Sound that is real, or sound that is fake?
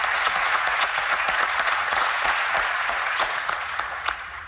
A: fake